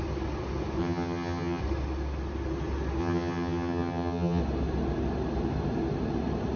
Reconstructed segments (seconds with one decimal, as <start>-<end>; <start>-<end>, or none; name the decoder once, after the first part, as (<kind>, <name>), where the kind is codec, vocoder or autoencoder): 0.8-1.6 (vocoder, HiFi-GAN); 3.0-4.4